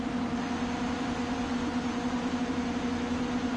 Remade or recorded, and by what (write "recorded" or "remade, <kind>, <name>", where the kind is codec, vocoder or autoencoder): recorded